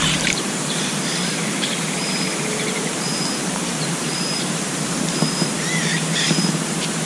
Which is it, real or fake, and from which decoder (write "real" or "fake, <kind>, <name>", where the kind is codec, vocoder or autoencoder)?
fake, vocoder, BigVGAN v2